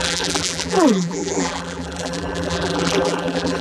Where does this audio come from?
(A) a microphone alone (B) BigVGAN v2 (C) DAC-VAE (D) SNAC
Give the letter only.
B